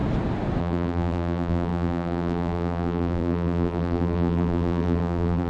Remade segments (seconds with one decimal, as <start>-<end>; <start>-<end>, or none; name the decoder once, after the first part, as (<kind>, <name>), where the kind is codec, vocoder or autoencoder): 0.6-5.5 (vocoder, BigVGAN v2)